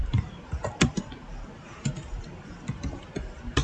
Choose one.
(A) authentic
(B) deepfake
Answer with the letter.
A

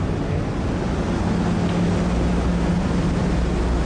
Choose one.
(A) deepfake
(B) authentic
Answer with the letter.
B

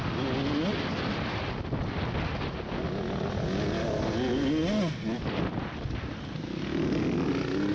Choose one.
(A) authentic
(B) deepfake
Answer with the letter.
A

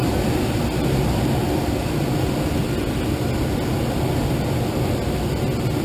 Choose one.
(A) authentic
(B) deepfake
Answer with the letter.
A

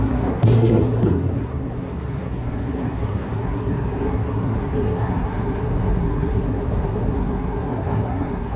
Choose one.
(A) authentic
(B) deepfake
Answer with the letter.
B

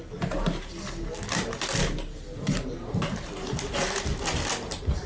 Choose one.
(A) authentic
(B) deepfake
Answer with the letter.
A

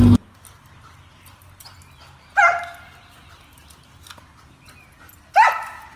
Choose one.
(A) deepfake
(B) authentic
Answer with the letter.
B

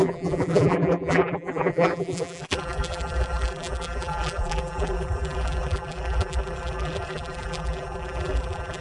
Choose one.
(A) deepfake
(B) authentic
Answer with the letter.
A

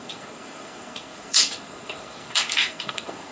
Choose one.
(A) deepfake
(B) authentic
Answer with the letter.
A